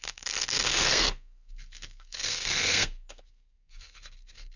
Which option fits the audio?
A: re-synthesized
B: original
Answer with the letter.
A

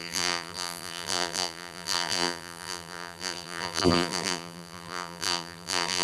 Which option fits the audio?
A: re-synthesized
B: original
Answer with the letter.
A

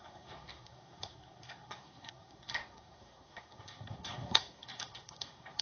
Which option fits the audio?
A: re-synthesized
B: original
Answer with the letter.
A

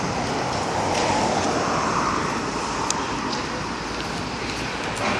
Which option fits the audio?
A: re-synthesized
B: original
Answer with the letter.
B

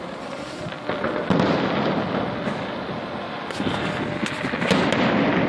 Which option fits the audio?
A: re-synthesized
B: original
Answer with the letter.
B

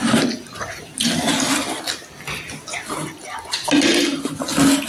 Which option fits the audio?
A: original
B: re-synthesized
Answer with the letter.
A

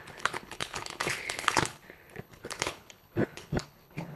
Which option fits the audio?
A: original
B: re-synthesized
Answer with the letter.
B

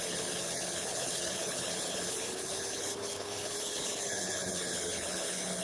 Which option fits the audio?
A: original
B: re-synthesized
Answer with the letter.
B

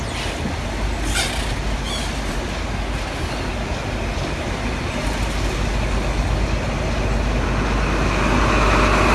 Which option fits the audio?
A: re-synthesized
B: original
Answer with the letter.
B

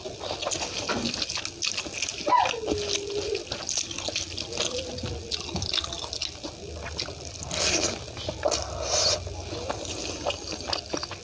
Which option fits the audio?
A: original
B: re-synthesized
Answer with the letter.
A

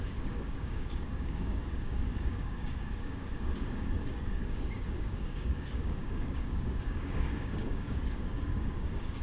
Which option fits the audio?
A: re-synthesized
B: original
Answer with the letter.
A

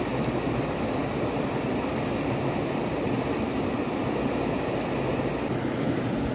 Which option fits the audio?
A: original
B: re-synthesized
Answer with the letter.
A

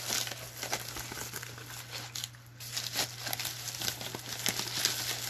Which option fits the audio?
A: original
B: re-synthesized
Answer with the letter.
A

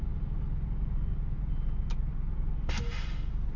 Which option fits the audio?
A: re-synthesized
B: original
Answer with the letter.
B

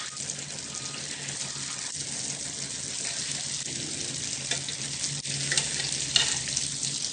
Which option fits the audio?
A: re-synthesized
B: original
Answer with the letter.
B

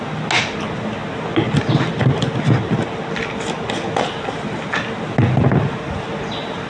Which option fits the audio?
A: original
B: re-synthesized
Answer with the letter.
A